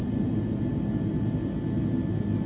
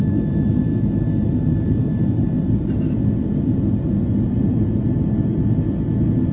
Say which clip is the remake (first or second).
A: second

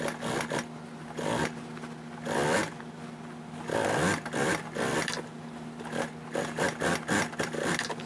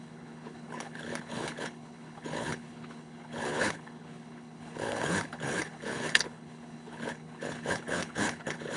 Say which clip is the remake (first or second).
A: second